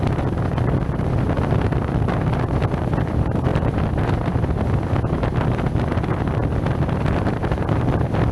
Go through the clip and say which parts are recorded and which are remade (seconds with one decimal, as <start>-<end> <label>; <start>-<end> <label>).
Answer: 0.0-8.3 remade